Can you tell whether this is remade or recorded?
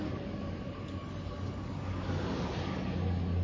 remade